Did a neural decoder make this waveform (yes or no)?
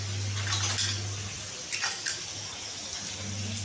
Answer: no